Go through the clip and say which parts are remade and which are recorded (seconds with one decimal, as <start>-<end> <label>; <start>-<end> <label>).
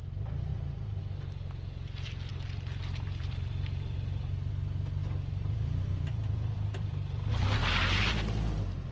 0.0-2.3 recorded; 2.3-4.5 remade; 4.5-5.0 recorded; 5.0-7.3 remade; 7.3-8.9 recorded